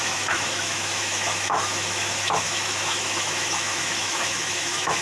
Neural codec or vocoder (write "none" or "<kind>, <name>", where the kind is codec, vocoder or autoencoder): autoencoder, DAC-VAE